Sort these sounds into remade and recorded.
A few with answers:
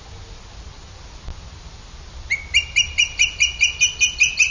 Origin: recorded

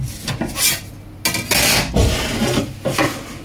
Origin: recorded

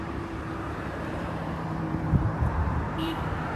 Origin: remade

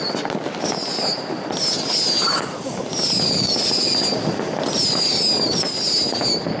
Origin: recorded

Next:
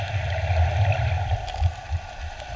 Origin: recorded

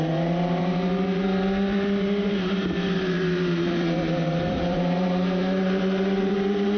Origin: remade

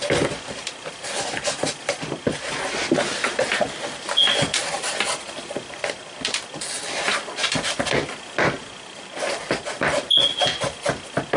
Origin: recorded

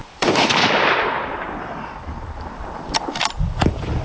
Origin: remade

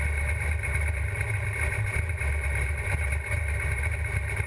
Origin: remade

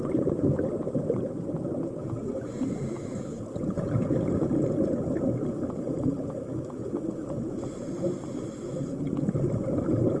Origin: recorded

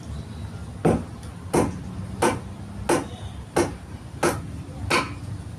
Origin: recorded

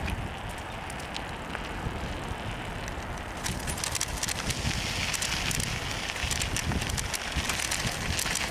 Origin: recorded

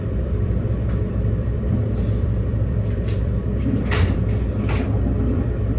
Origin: remade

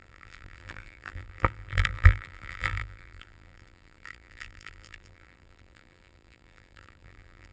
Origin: remade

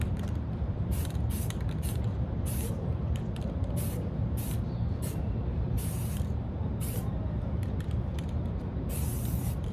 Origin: remade